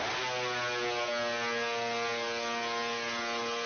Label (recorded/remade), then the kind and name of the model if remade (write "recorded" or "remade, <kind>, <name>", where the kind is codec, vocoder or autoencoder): recorded